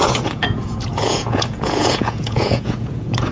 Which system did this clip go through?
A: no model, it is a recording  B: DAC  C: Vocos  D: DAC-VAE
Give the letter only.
C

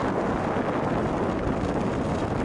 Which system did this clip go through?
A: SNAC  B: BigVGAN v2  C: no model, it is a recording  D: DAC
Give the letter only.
C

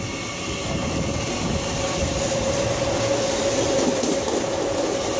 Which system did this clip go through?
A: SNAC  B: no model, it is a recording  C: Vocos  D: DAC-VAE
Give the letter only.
B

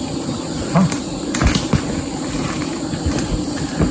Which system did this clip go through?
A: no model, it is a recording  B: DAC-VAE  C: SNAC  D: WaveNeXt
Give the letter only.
A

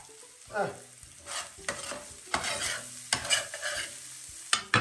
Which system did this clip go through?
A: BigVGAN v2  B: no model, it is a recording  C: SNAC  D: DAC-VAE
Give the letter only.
B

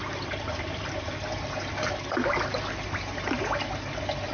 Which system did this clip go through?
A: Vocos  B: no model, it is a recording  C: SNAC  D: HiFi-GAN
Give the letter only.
B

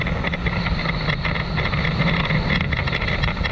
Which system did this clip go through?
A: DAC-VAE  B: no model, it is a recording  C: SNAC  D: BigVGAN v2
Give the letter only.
B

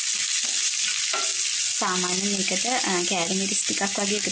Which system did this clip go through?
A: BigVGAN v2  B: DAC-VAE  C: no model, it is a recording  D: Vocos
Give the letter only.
C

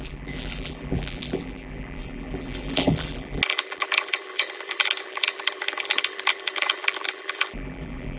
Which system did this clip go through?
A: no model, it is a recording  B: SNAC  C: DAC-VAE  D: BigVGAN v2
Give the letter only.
D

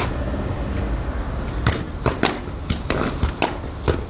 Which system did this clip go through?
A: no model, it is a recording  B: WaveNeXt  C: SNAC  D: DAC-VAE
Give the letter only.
A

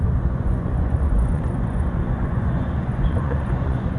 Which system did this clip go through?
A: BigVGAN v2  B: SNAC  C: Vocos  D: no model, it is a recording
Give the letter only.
C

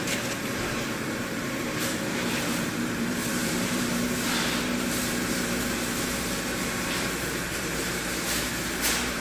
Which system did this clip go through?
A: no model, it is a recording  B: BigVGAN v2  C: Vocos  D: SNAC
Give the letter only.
B